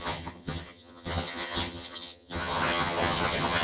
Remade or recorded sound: remade